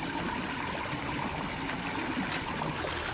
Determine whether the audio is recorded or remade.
recorded